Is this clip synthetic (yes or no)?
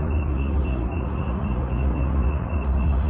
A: yes